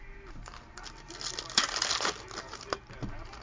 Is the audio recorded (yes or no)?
yes